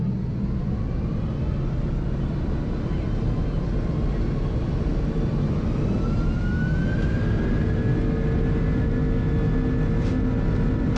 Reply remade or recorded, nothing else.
recorded